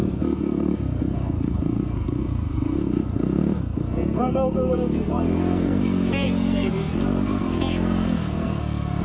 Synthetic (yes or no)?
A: yes